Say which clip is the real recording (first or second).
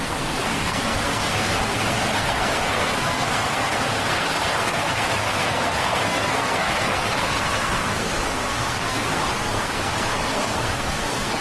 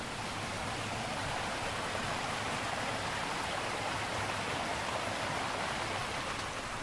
second